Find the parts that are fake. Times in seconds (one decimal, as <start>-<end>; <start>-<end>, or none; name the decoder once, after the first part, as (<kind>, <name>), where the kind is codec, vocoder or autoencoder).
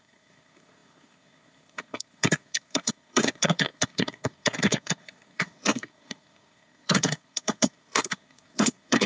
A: 0.0-9.1 (codec, SNAC)